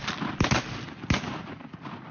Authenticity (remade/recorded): recorded